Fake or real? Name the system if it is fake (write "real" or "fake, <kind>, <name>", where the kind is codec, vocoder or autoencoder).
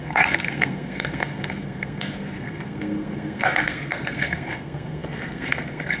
fake, codec, SNAC